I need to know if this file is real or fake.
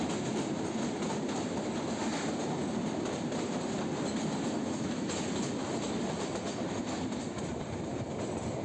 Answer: real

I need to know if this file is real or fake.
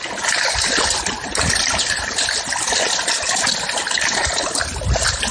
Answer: real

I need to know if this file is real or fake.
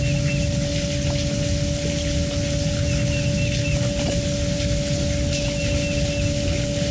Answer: real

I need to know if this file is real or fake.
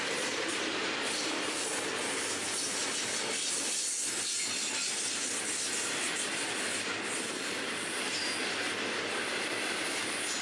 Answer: real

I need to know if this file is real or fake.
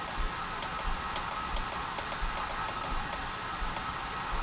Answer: real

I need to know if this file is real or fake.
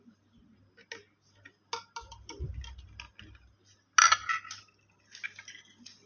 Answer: real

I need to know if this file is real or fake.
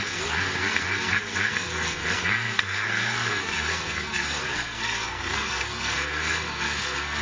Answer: fake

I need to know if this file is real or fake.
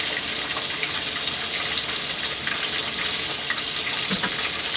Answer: real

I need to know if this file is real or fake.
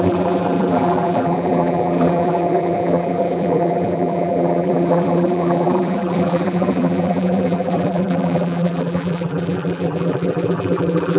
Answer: fake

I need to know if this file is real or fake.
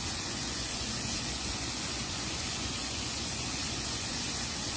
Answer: fake